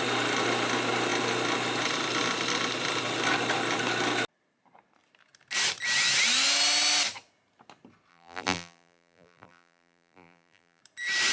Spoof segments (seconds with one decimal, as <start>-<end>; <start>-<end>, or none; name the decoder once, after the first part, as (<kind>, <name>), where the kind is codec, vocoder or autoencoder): 8.1-10.8 (vocoder, BigVGAN v2)